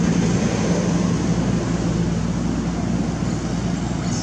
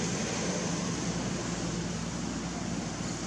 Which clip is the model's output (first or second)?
second